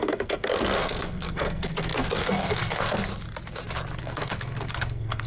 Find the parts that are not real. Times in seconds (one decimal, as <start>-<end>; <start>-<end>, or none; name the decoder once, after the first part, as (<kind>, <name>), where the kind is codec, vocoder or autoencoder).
0.0-3.1 (codec, SNAC); 4.0-5.3